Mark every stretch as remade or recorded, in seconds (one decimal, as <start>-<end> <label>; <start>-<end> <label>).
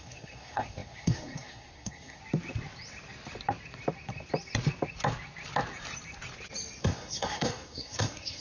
0.0-2.2 remade; 2.2-6.8 recorded; 6.8-8.4 remade